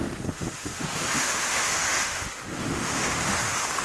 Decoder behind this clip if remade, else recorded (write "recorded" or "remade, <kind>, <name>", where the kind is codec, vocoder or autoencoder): remade, autoencoder, DAC-VAE